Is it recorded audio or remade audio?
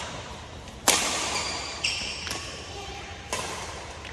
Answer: remade